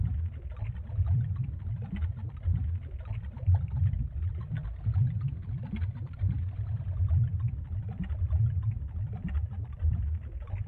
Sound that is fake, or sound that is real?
fake